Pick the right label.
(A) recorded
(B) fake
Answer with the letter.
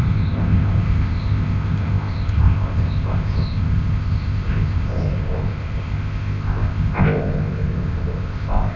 B